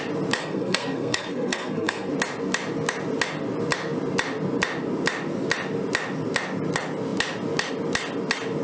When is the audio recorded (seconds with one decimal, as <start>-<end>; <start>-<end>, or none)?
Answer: 0.0-0.4; 2.1-8.6